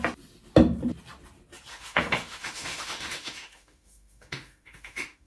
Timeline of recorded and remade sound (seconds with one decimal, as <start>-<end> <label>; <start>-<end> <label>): 0.0-1.7 recorded; 1.7-5.3 remade